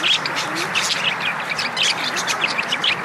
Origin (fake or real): real